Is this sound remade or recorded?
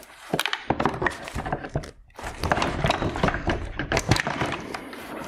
remade